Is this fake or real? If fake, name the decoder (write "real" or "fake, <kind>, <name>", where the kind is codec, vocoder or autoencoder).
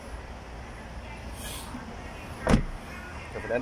real